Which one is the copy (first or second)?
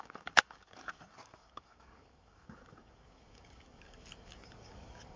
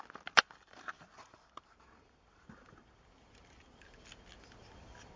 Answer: first